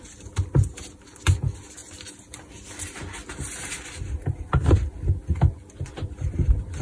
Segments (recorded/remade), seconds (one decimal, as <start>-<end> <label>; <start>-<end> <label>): 0.0-6.8 recorded